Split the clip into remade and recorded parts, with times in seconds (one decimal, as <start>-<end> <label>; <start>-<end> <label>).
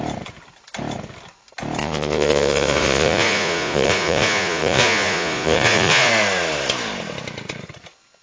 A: 0.0-1.8 recorded; 1.8-6.1 remade; 6.1-8.2 recorded